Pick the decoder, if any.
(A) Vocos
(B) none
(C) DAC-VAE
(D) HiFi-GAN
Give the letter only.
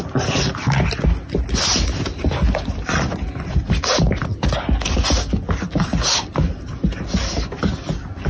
B